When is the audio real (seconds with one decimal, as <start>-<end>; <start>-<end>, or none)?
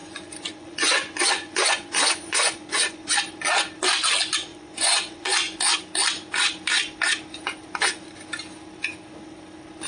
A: 3.1-4.5; 5.6-9.9